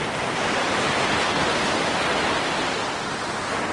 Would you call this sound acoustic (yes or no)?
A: yes